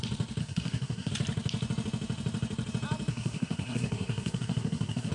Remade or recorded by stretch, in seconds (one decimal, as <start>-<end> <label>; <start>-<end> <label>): 0.0-0.4 recorded; 0.4-1.1 remade; 1.1-3.1 recorded; 3.1-5.1 remade